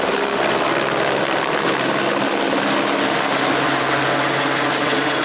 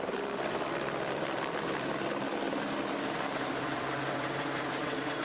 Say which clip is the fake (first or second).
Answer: second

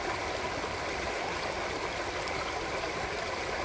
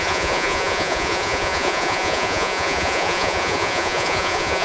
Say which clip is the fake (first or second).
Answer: second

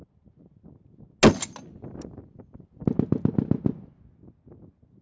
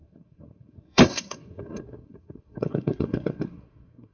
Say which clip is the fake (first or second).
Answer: second